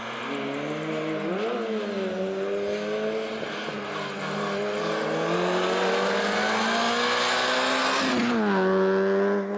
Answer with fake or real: real